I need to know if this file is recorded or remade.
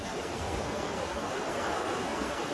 remade